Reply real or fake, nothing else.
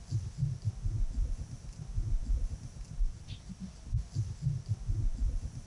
real